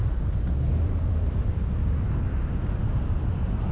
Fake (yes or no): no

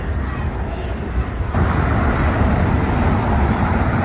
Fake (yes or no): no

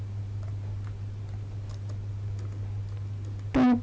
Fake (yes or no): no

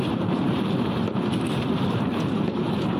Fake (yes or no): yes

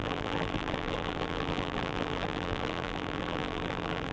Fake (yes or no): yes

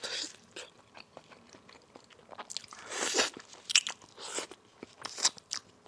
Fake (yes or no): no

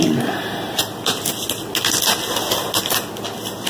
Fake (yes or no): no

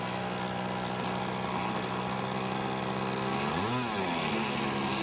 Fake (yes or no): no